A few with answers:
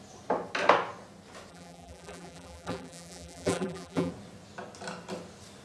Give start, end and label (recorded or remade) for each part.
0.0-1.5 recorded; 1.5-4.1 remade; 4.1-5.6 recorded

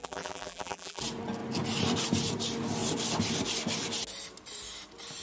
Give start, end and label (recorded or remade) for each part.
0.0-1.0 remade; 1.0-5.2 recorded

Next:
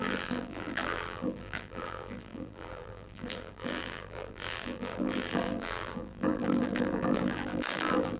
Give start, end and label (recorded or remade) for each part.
0.0-8.2 remade

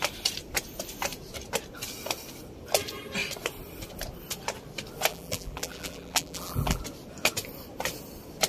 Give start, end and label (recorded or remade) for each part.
0.0-5.1 recorded; 5.1-6.8 remade; 6.8-8.5 recorded

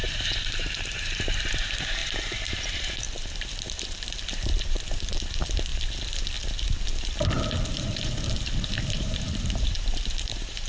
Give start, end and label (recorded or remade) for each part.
0.0-5.7 remade; 5.7-7.7 recorded; 7.7-10.7 remade